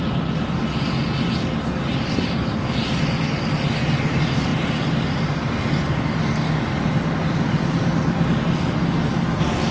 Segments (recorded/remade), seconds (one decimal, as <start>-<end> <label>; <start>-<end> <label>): 0.0-0.6 remade; 0.6-4.5 recorded; 4.5-6.2 remade; 6.2-9.7 recorded